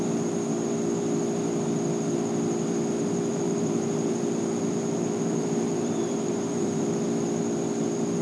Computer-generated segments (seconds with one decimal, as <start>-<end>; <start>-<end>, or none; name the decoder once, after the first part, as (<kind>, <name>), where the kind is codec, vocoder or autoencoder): 3.3-6.9 (vocoder, BigVGAN v2)